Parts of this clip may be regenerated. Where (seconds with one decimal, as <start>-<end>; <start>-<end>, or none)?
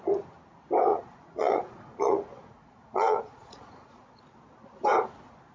0.9-4.2